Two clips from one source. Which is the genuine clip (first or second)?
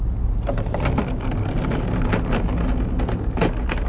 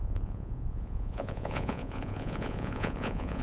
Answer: first